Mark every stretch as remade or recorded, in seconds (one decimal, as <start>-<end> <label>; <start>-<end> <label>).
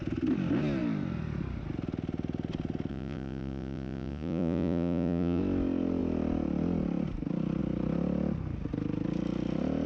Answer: 0.0-2.9 recorded; 2.9-5.4 remade; 5.4-9.9 recorded